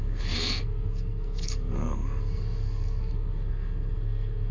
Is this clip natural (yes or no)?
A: no